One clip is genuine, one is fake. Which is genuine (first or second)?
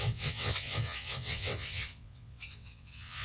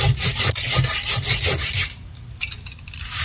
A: second